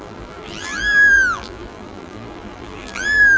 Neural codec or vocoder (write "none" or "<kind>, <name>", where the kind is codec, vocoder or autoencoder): vocoder, BigVGAN v2